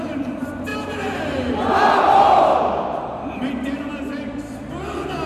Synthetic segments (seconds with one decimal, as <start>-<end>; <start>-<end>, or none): 0.7-3.9